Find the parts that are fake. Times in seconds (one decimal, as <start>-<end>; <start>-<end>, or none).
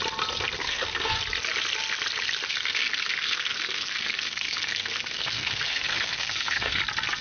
0.6-1.2; 2.5-6.8